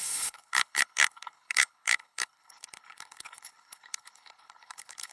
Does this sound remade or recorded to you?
remade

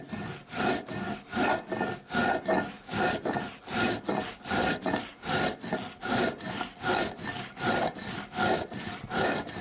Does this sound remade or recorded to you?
recorded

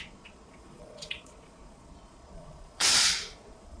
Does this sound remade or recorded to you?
remade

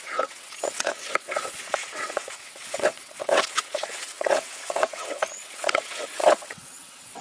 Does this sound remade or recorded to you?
remade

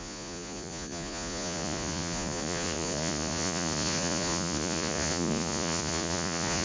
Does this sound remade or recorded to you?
remade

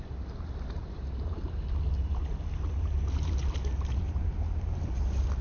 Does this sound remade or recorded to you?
recorded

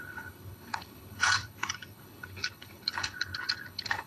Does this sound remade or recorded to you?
remade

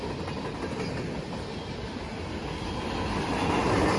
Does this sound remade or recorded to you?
recorded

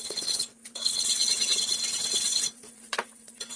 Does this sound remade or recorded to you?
remade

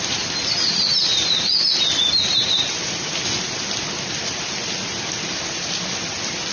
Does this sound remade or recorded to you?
recorded